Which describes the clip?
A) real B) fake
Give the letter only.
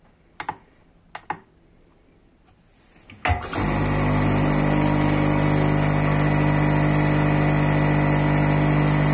A